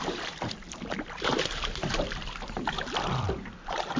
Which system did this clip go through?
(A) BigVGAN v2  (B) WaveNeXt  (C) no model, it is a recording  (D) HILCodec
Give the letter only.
A